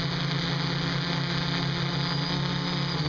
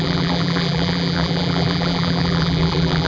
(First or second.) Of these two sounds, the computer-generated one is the second